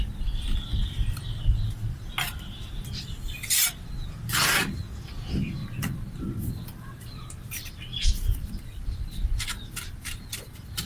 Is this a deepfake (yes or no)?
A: no